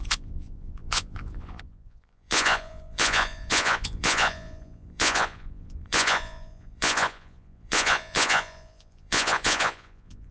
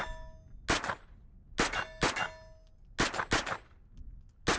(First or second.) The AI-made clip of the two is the first